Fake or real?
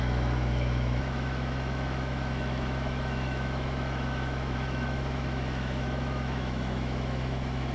fake